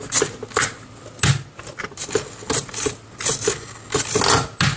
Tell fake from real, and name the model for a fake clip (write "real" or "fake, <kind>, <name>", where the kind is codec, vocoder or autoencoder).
real